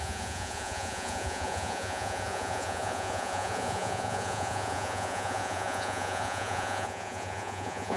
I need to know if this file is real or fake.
fake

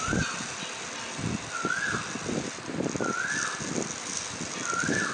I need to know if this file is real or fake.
real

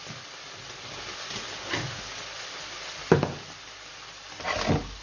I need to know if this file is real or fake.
real